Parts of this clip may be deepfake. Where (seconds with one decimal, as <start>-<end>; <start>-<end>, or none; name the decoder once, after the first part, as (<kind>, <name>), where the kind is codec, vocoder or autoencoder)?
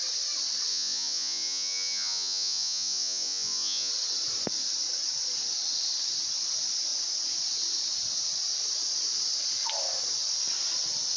0.7-3.9 (vocoder, Vocos)